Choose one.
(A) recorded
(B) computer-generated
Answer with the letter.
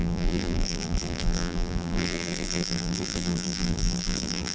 B